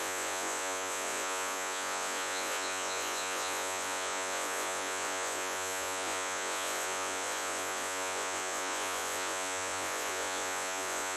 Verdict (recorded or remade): remade